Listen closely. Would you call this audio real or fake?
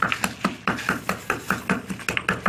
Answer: real